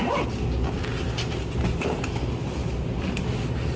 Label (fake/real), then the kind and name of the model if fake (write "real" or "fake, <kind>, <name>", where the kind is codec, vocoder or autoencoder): real